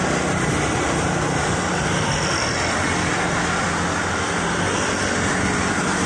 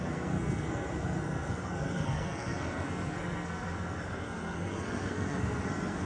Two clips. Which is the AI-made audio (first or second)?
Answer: second